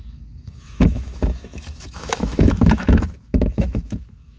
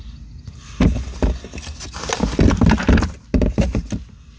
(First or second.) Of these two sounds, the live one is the second